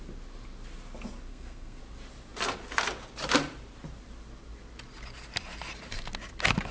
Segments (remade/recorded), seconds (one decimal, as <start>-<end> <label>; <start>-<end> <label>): 0.0-1.3 recorded; 1.3-1.8 remade; 1.8-6.7 recorded